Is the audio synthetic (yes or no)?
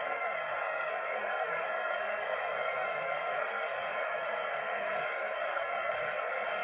yes